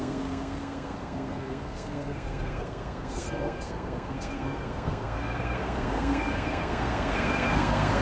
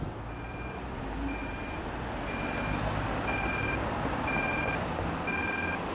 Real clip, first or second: second